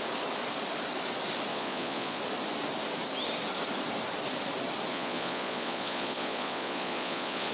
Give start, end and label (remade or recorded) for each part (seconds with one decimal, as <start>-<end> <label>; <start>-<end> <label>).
0.0-1.5 recorded; 1.5-2.2 remade; 2.2-4.9 recorded; 4.9-7.5 remade